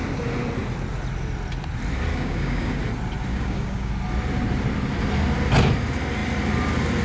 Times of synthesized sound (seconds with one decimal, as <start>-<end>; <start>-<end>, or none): 2.1-2.8; 3.3-3.9